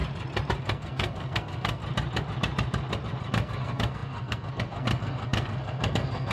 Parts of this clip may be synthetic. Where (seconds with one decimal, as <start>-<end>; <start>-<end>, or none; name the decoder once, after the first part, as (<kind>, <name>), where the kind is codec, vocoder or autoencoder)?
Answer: 0.6-1.8 (codec, SNAC); 3.3-6.3